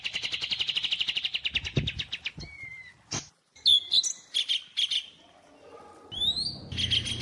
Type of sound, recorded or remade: recorded